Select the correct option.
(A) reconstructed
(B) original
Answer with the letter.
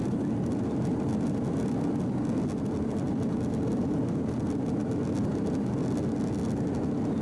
B